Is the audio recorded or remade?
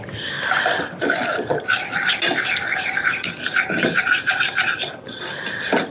recorded